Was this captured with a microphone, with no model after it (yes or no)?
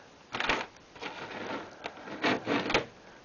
yes